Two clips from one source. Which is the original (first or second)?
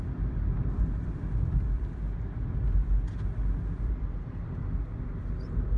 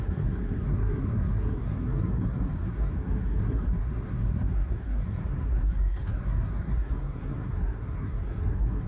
first